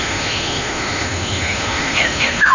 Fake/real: fake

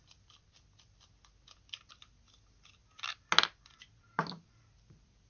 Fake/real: real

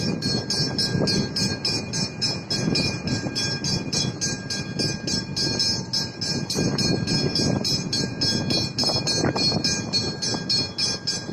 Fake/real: real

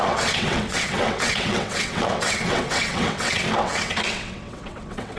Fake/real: fake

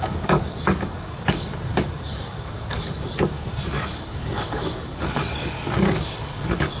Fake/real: fake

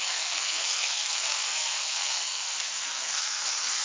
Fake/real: fake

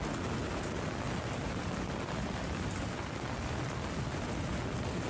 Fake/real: real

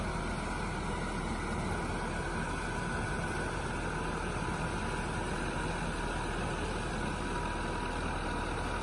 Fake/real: real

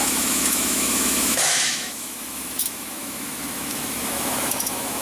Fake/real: fake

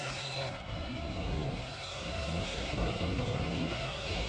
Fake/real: fake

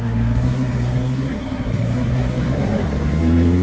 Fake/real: fake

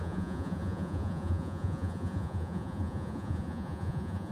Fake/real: fake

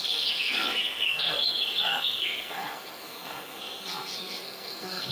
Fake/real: fake